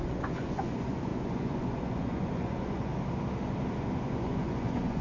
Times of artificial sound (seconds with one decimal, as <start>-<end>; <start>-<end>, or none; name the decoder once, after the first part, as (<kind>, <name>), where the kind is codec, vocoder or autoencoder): 0.0-2.9 (vocoder, Vocos); 3.7-5.0